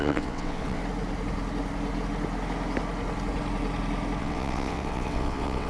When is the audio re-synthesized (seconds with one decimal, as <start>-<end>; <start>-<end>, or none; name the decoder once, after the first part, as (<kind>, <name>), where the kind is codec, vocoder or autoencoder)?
0.0-0.8 (vocoder, WaveNeXt); 4.2-5.7